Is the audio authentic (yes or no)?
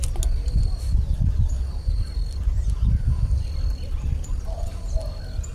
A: yes